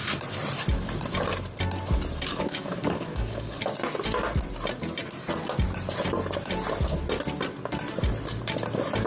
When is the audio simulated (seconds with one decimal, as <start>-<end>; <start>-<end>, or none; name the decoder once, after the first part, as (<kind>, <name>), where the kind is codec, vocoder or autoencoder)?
2.3-3.7 (codec, DAC)